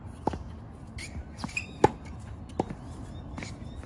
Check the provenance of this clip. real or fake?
real